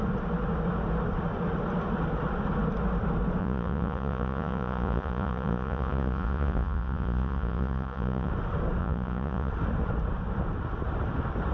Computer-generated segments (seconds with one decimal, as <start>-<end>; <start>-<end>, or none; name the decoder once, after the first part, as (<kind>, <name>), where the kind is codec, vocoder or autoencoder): 3.4-8.3 (vocoder, Vocos); 8.8-9.5